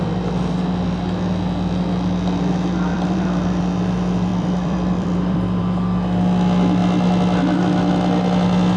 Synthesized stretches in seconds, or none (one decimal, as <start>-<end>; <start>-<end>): 2.9-3.6; 4.3-5.6